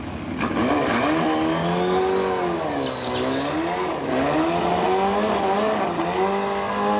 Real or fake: real